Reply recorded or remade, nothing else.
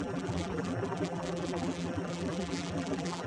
remade